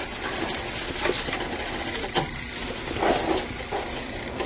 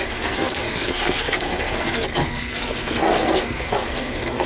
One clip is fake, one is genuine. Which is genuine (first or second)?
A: first